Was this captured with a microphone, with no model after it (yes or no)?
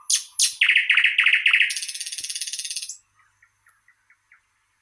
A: yes